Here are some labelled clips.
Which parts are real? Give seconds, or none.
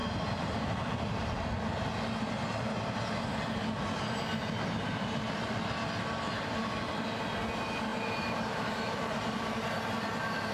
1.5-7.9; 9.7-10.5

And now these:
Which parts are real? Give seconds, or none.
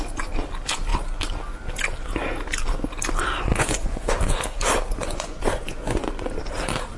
0.0-3.5; 4.1-5.0; 6.1-7.0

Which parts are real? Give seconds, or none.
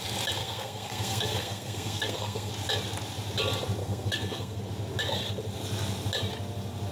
0.0-0.4; 2.5-3.8; 4.6-6.9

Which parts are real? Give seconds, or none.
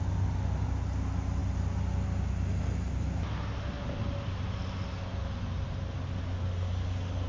0.0-7.3